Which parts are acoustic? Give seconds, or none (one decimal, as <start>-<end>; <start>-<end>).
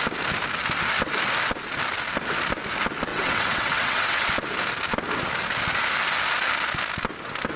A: 0.0-3.1; 4.3-7.6